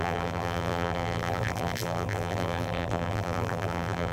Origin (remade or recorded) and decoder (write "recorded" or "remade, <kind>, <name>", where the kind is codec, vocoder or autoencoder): remade, vocoder, BigVGAN v2